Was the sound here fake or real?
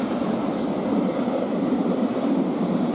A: real